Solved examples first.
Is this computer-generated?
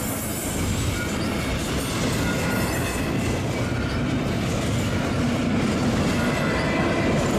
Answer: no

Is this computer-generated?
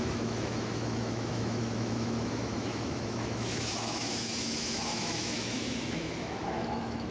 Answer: yes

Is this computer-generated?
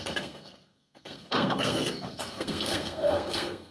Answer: yes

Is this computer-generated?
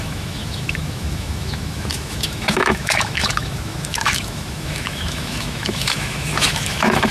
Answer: yes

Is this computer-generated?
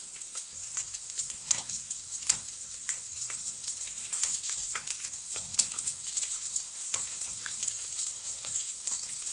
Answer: yes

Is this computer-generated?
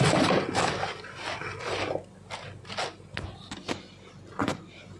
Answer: no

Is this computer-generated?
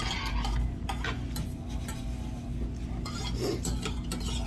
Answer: no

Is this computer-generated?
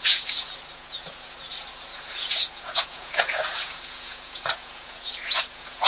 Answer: yes